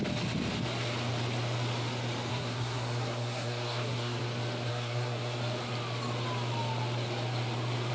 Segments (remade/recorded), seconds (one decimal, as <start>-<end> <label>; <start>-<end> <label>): 0.0-2.3 recorded; 2.3-4.2 remade; 4.2-4.7 recorded; 4.7-5.4 remade; 5.4-7.9 recorded